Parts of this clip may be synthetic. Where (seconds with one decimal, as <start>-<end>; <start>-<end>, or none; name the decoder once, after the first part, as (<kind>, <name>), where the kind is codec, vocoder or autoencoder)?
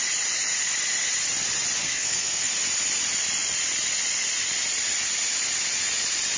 1.8-2.5 (codec, SNAC)